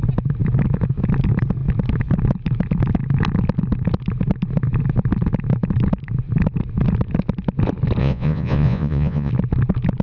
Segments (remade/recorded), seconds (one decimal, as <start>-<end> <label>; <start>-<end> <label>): 0.0-8.0 recorded; 8.0-9.3 remade; 9.3-10.0 recorded